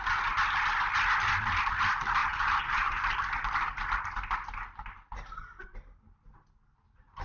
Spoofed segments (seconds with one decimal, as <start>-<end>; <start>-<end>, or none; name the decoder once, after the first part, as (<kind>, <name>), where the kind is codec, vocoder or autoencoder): 2.2-3.0 (vocoder, Vocos)